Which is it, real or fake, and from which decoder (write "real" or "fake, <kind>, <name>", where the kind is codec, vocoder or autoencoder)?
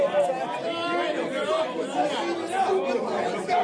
real